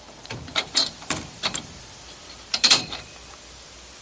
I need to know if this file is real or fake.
fake